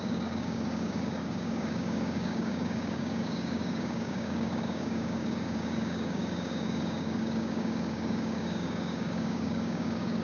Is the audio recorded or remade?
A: remade